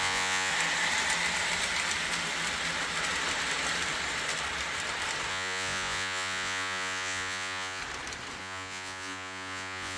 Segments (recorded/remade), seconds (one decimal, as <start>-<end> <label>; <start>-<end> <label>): 0.0-0.5 remade; 0.5-5.3 recorded; 5.3-7.8 remade; 7.8-8.4 recorded; 8.4-10.0 remade